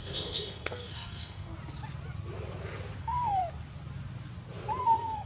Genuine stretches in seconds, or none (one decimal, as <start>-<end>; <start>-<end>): 1.5-3.0; 3.4-4.8